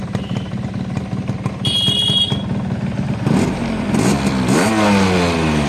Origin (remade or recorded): recorded